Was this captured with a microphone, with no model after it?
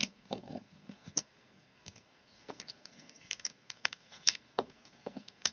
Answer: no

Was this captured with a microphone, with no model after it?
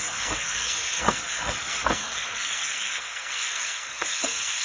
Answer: no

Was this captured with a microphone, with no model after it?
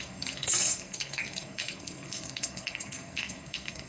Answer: no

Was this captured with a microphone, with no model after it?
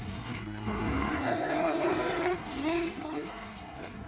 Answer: no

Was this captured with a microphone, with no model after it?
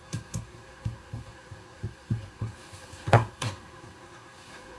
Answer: no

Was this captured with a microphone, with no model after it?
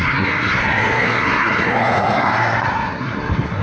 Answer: no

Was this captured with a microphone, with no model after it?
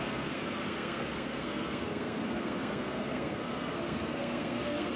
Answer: no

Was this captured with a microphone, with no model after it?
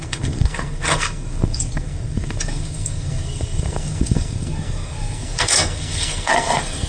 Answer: no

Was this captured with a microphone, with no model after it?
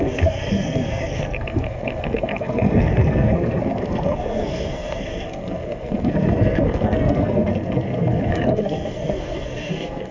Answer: no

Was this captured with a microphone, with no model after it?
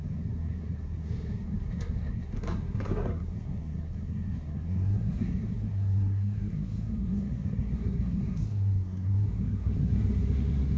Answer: no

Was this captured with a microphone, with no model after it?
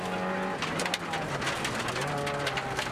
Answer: yes